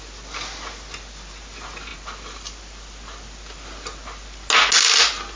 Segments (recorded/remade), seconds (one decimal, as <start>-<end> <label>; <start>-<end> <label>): 0.0-5.4 recorded